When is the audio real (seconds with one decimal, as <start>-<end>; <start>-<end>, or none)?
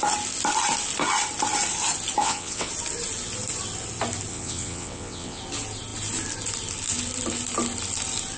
0.0-2.2; 2.7-4.3; 5.4-8.4